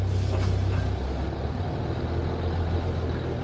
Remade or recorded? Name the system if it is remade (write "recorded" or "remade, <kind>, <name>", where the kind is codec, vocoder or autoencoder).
recorded